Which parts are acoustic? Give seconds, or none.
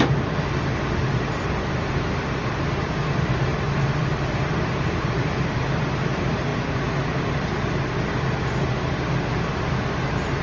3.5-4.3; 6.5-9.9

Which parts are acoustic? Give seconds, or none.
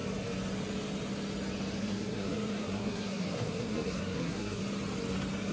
0.0-1.8; 4.6-5.5